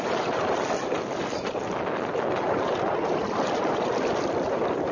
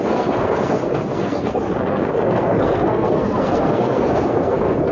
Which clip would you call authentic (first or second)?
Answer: first